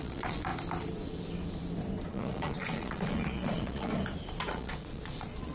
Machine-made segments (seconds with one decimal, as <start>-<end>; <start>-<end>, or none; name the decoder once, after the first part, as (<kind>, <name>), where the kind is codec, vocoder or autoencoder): 0.0-0.5 (vocoder, Vocos); 2.1-3.9; 4.5-5.5